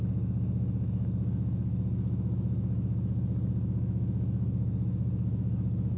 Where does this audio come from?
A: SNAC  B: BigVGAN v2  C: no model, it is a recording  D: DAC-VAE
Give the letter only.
D